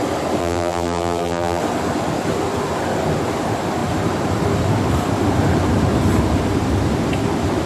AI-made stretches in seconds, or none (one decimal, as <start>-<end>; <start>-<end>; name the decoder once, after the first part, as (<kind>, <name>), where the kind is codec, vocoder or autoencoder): 0.4-1.6 (vocoder, BigVGAN v2)